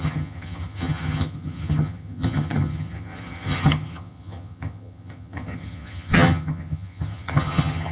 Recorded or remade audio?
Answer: remade